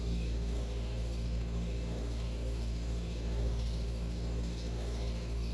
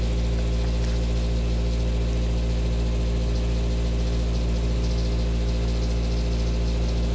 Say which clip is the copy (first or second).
first